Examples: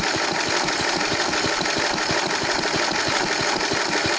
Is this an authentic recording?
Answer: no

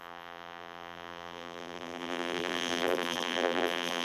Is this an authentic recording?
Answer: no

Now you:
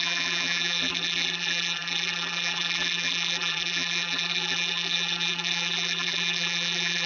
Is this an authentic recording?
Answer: no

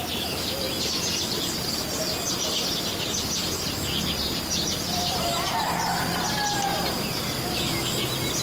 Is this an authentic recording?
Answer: yes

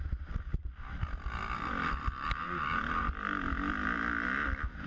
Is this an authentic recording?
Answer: yes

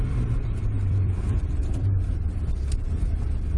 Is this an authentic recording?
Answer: no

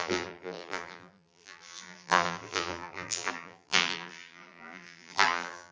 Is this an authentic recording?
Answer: no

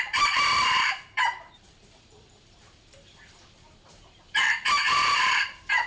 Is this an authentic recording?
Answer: no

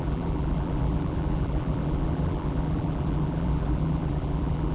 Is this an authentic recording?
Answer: no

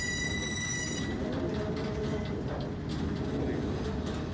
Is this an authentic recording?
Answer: yes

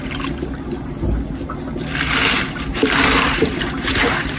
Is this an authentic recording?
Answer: no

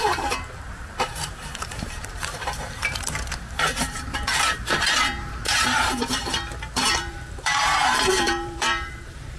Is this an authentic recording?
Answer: no